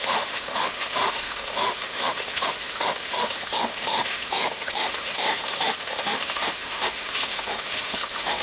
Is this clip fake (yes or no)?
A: yes